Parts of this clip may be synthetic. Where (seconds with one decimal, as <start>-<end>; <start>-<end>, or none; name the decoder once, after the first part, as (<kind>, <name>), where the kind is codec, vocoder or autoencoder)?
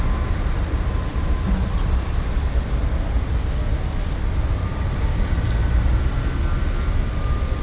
none